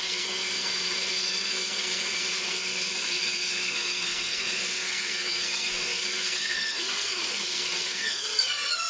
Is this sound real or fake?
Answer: fake